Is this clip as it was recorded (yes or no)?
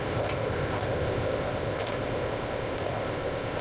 no